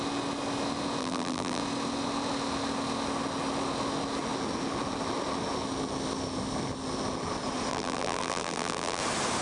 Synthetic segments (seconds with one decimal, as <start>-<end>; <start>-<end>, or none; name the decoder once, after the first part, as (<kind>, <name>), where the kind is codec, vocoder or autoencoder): 1.0-1.6 (vocoder, BigVGAN v2); 7.7-9.0